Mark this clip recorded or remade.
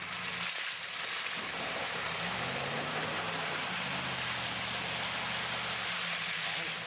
recorded